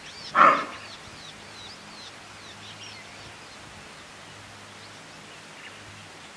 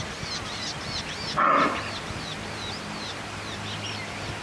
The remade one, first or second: second